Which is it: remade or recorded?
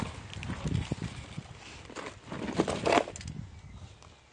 recorded